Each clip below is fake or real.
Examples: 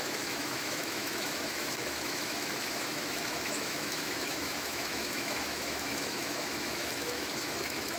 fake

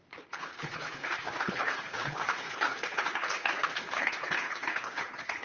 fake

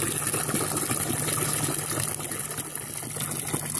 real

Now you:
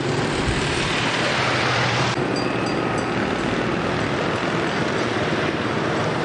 real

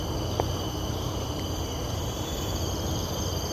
fake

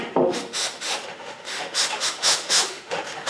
fake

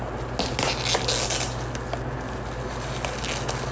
real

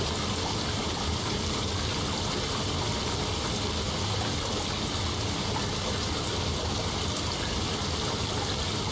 real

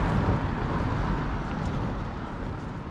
real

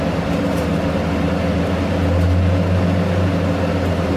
real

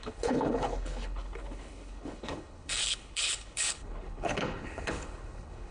fake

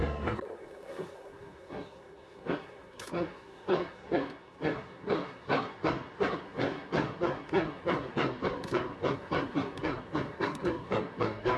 fake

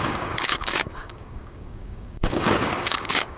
fake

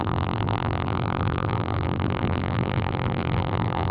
fake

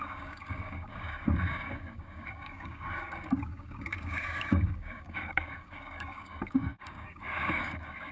fake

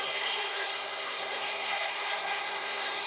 fake